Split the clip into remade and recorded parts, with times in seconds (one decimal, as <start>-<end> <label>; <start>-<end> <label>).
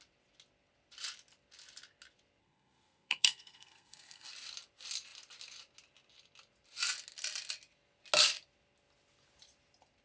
0.0-2.4 recorded; 2.4-4.3 remade; 4.3-10.0 recorded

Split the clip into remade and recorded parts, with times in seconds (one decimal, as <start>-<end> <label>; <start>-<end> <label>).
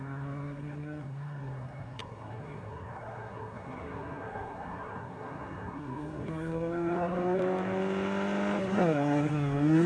0.0-7.4 remade; 7.4-8.6 recorded; 8.6-9.9 remade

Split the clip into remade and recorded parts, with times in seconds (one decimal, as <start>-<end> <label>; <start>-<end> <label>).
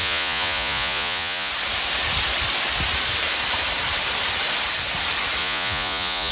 0.0-1.5 remade; 1.5-5.4 recorded; 5.4-6.3 remade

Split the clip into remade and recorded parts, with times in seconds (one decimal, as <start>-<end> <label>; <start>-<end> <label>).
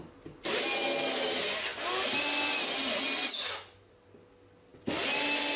0.0-5.6 recorded